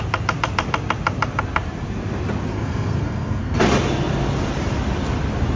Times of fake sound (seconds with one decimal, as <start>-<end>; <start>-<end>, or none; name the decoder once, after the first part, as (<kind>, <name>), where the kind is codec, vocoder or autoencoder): 2.5-3.6 (codec, SNAC)